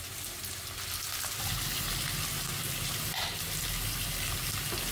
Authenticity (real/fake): real